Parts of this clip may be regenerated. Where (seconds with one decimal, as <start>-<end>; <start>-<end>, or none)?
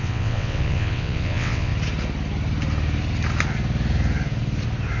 0.0-1.7